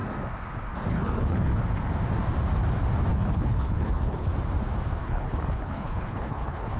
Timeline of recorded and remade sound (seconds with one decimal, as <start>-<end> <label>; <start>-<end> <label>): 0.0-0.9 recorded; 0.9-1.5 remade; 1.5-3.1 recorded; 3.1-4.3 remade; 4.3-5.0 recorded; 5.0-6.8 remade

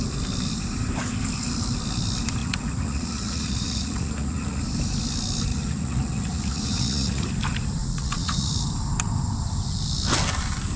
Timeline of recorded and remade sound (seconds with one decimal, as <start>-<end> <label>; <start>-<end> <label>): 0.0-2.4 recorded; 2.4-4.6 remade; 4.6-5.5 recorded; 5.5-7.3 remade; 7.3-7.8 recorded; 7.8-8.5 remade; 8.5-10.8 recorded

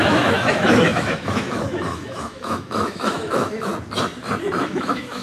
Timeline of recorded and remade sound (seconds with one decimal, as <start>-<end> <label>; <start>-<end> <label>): 0.0-3.7 remade; 3.7-4.6 recorded; 4.6-5.2 remade

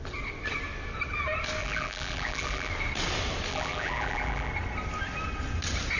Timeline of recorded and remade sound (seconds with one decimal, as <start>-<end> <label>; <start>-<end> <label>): 0.0-1.6 recorded; 1.6-2.7 remade; 2.7-3.5 recorded; 3.5-4.5 remade; 4.5-6.0 recorded